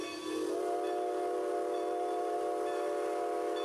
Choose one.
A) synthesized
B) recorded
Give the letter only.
B